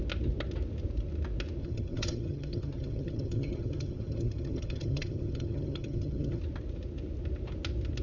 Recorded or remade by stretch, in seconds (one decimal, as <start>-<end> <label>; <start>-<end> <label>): 0.0-1.6 recorded; 1.6-6.4 remade; 6.4-8.0 recorded

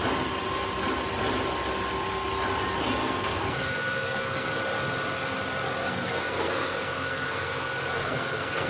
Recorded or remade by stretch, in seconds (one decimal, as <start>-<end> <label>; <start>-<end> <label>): 0.0-3.0 recorded; 3.0-4.6 remade; 4.6-5.8 recorded; 5.8-8.7 remade

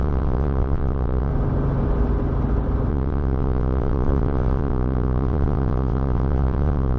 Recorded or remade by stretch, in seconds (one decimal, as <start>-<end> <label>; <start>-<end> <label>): 0.0-1.3 remade; 1.3-2.9 recorded; 2.9-7.0 remade

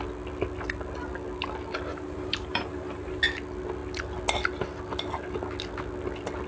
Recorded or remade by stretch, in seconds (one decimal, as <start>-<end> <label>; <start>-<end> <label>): 0.0-1.9 recorded; 1.9-3.2 remade; 3.2-6.5 recorded

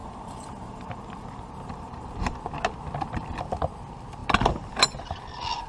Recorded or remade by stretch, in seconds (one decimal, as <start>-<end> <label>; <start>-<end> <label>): 0.0-2.4 remade; 2.4-5.7 recorded

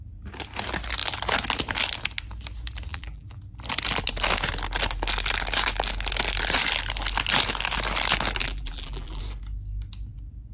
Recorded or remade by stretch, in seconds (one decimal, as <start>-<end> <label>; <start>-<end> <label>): 0.0-2.9 recorded; 2.9-3.4 remade; 3.4-8.4 recorded; 8.4-9.2 remade; 9.2-10.5 recorded

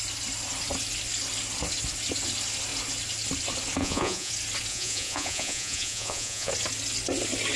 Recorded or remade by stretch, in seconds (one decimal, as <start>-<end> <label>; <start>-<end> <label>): 0.0-3.8 recorded; 3.8-4.3 remade; 4.3-4.7 recorded; 4.7-6.5 remade; 6.5-7.6 recorded